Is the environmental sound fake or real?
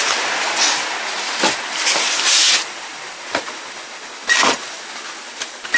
real